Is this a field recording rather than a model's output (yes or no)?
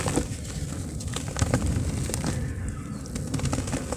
yes